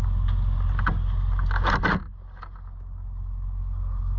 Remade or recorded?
recorded